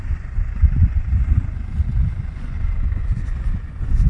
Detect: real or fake fake